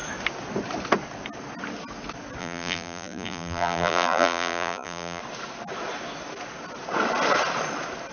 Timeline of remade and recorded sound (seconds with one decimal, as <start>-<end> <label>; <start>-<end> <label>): 0.0-2.4 recorded; 2.4-5.2 remade; 5.2-8.1 recorded